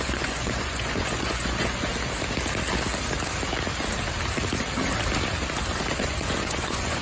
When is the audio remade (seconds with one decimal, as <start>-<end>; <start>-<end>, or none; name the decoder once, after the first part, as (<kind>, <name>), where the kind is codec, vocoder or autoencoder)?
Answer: 0.0-1.9 (vocoder, Vocos); 6.0-7.0